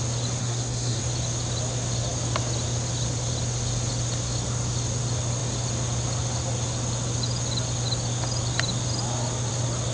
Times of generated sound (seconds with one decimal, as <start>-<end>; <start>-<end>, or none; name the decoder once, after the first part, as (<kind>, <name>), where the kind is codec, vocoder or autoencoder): 0.4-1.0 (codec, SNAC)